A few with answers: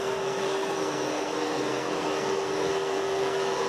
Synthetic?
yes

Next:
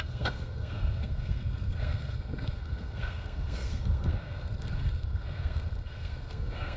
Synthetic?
yes